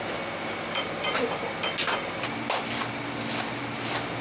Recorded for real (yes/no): yes